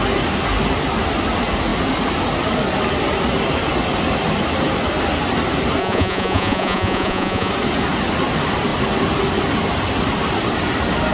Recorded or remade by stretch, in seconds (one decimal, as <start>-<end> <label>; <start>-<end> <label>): 0.0-5.8 recorded; 5.8-7.5 remade; 7.5-11.1 recorded